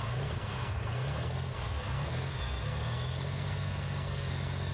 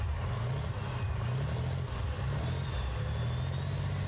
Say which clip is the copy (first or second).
first